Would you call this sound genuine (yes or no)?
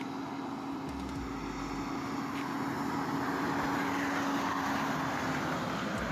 yes